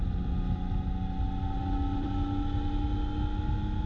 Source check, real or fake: real